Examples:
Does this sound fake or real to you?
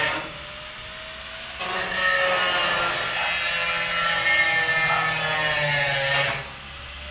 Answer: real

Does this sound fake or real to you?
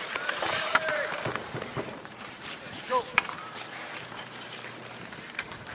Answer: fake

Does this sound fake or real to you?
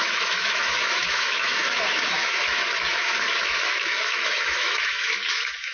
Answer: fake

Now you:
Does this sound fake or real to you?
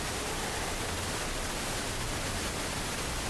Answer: real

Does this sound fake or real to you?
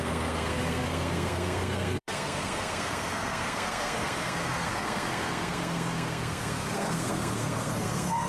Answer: fake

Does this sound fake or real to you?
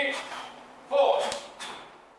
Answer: fake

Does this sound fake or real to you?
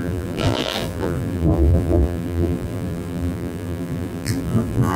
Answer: fake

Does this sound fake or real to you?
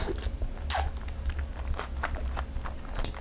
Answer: real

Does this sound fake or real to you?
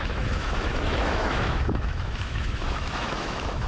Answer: fake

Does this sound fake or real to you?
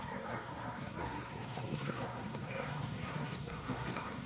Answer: fake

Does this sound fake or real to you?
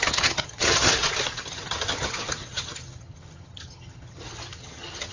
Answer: fake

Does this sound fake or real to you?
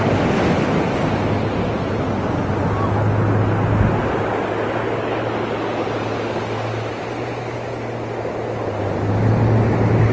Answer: real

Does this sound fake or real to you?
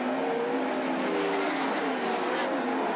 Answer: real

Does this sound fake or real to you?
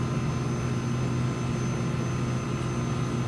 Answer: real